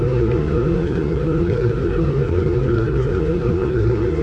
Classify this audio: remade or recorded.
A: remade